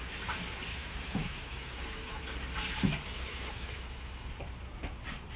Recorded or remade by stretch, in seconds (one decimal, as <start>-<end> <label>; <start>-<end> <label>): 0.0-0.7 recorded; 0.7-2.2 remade; 2.2-3.1 recorded; 3.1-4.3 remade; 4.3-5.4 recorded